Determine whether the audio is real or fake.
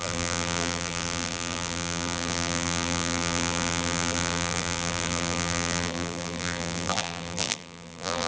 fake